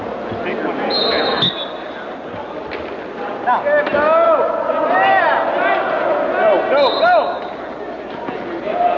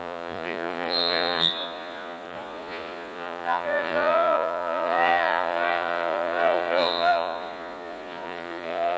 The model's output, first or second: second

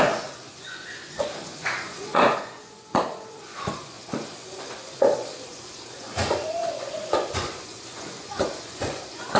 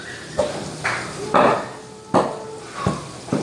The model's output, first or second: first